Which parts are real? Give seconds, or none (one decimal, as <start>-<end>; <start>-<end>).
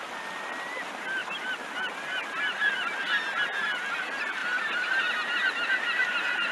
0.0-4.4